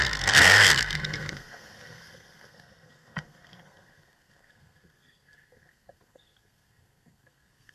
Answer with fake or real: fake